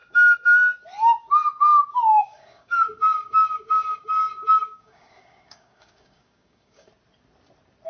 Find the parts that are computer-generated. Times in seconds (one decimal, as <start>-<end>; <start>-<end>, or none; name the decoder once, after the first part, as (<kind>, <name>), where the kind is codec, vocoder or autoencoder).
2.2-6.9 (codec, DAC)